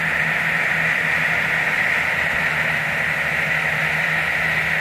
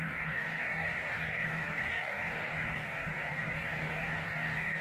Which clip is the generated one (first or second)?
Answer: second